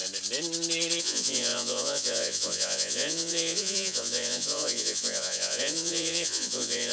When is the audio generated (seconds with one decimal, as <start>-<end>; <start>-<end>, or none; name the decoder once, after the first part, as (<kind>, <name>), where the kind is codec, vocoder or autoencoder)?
1.0-6.9 (vocoder, Vocos)